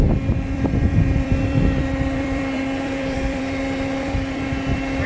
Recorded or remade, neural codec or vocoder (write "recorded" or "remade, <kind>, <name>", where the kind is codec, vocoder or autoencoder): remade, vocoder, BigVGAN v2